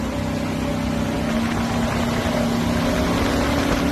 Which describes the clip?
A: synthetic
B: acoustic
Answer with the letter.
B